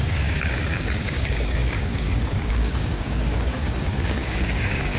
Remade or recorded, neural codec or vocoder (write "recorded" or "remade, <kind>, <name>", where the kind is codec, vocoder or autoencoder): remade, codec, DAC